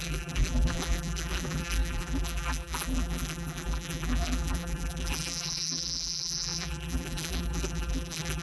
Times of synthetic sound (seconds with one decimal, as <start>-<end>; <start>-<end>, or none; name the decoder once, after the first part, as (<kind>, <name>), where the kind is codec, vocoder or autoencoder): 0.0-8.4 (vocoder, BigVGAN v2)